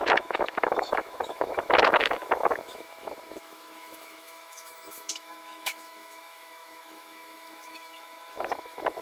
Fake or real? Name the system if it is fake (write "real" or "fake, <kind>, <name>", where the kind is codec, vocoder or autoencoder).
fake, autoencoder, DAC-VAE